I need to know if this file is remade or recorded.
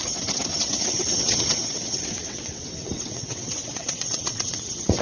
remade